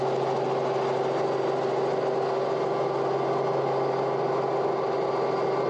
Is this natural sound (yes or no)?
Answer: yes